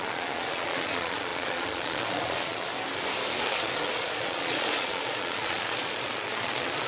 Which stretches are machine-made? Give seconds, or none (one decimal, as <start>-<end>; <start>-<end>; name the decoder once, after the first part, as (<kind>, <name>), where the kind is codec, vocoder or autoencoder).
0.0-2.7 (vocoder, Vocos); 3.4-6.9